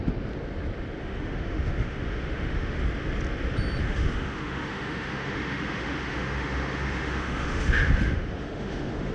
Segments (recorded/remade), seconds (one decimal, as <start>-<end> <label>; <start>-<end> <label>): 0.0-1.0 recorded; 1.0-2.8 remade; 2.8-3.8 recorded; 3.8-9.1 remade